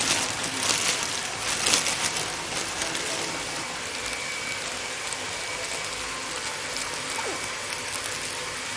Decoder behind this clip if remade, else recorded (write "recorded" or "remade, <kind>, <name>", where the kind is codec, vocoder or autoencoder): recorded